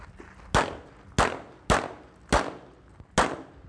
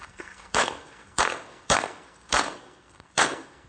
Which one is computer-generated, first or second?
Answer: second